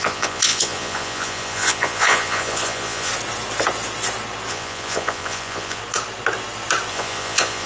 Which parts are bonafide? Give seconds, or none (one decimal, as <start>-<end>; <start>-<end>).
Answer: 3.1-4.5; 5.8-6.9